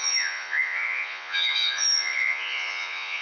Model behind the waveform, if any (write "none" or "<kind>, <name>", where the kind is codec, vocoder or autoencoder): vocoder, Vocos